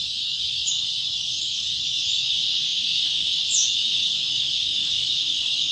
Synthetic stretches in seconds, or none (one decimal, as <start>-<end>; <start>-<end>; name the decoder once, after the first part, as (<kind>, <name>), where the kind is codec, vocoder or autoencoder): 0.0-5.7 (codec, DAC)